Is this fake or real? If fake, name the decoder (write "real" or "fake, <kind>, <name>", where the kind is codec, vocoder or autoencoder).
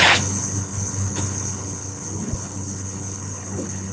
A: fake, codec, HILCodec